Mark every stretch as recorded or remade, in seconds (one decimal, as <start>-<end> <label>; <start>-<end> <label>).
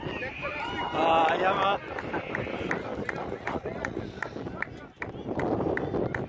0.0-3.2 recorded; 3.2-4.0 remade; 4.0-6.3 recorded